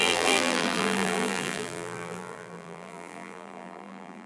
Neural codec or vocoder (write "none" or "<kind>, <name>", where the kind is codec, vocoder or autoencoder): vocoder, BigVGAN v2